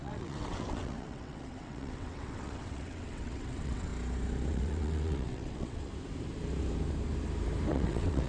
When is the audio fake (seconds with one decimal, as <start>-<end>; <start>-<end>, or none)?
0.0-3.9; 4.5-5.9; 7.7-8.3